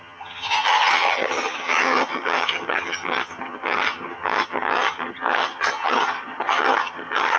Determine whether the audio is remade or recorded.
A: remade